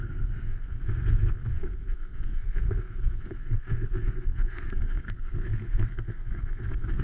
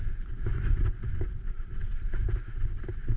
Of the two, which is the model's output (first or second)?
first